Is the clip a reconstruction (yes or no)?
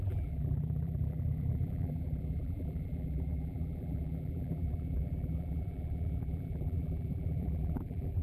yes